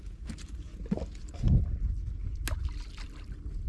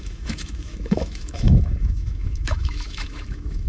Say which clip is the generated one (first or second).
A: second